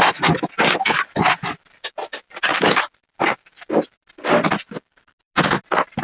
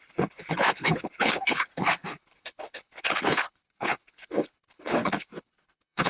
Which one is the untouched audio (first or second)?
first